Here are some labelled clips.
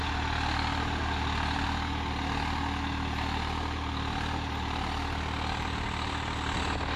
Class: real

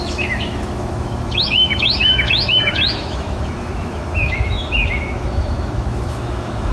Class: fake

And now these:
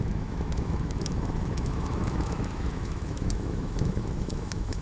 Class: fake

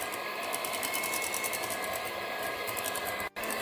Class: real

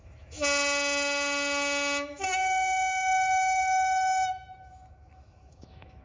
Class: fake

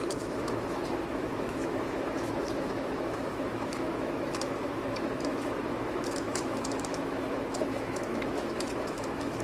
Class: fake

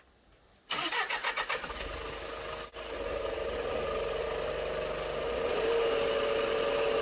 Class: real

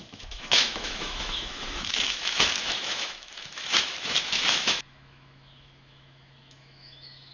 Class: fake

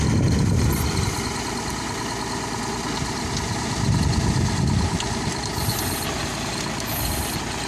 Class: real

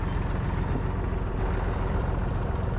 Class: real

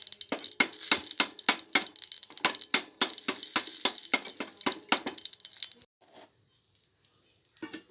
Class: real